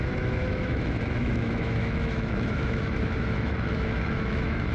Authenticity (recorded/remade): remade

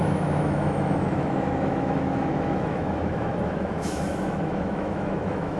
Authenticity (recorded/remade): remade